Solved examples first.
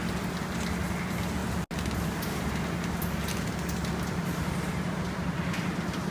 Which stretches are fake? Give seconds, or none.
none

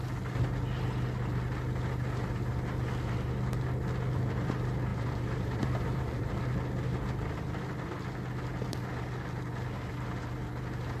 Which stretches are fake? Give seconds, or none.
4.9-6.3 (vocoder, BigVGAN v2)

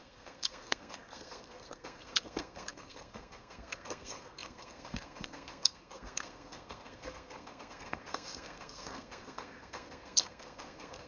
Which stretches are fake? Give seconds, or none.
0.0-11.1 (codec, SNAC)

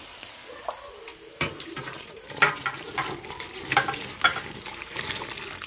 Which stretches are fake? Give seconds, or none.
1.1-2.9 (vocoder, BigVGAN v2); 4.3-5.0